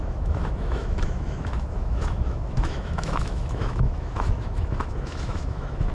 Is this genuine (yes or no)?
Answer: no